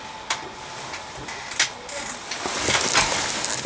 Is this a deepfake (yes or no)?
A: no